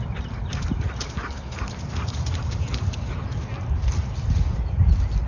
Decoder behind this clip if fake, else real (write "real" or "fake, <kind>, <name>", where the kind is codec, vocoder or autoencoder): real